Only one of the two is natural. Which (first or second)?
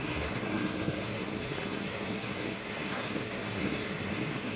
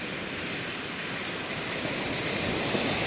second